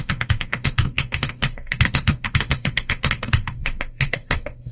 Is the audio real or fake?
fake